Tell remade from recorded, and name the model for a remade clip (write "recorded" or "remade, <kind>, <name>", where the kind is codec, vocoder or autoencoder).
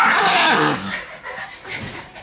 recorded